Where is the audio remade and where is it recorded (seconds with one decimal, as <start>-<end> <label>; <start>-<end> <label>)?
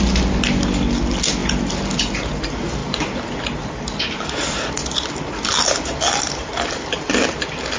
0.0-7.8 recorded